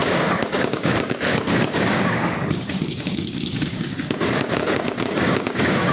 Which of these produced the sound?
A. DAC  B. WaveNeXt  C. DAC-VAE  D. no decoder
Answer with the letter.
A